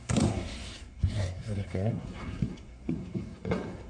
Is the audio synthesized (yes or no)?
yes